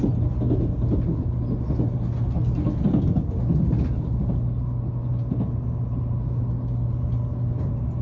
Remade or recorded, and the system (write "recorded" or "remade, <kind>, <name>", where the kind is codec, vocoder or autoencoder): recorded